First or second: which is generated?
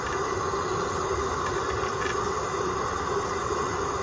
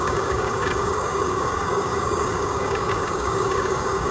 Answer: second